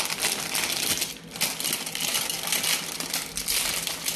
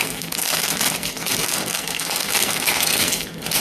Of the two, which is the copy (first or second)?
second